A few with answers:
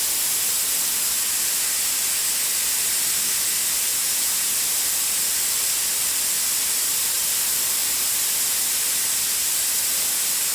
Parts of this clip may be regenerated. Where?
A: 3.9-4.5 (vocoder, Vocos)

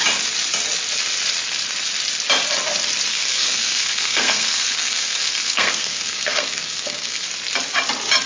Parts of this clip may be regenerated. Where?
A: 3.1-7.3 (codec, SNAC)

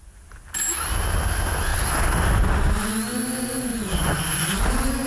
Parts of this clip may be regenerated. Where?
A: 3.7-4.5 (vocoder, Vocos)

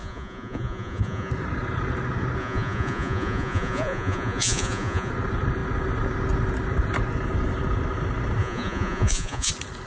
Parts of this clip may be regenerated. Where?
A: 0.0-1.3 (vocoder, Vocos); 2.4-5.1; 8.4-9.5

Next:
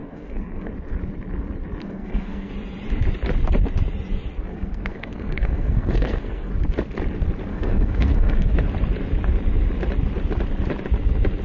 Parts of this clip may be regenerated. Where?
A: 0.0-0.7 (codec, SNAC); 1.8-2.5; 4.5-6.5; 7.5-8.5

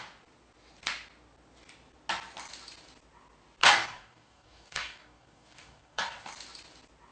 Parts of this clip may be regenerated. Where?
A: 3.6-6.3 (codec, DAC)

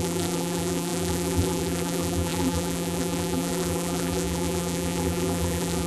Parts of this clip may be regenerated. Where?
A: 0.0-5.9 (vocoder, BigVGAN v2)